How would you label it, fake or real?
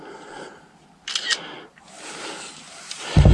real